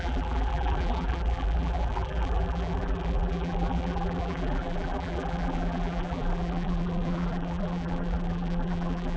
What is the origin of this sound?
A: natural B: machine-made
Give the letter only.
B